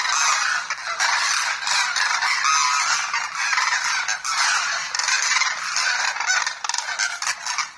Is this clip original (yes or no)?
yes